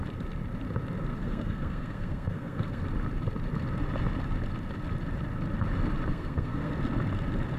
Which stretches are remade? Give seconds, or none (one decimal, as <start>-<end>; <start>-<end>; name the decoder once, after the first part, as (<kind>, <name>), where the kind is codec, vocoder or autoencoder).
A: 1.1-2.8 (codec, SNAC); 6.1-6.7